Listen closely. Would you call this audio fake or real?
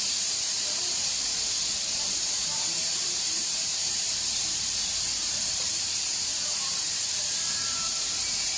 fake